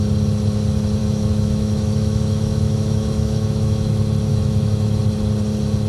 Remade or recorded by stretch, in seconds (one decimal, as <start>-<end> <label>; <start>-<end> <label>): 0.0-1.0 recorded; 1.0-3.9 remade; 3.9-4.3 recorded; 4.3-5.0 remade; 5.0-5.9 recorded